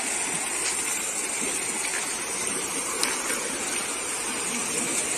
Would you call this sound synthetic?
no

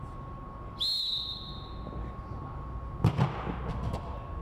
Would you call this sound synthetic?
no